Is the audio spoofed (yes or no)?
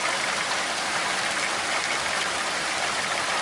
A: no